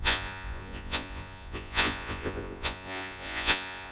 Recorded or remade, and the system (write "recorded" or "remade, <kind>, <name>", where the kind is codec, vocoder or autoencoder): remade, vocoder, Vocos